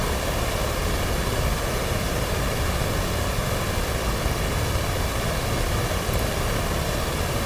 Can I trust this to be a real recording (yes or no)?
yes